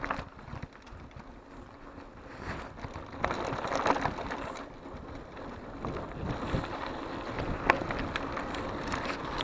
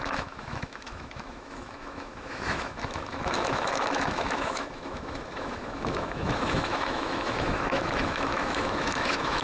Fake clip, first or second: second